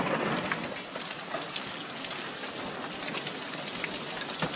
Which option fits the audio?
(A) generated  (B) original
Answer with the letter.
B